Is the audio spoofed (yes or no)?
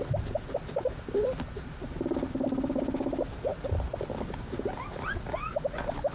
no